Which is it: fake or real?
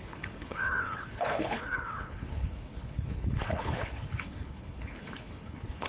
fake